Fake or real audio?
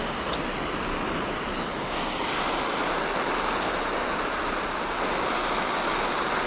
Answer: real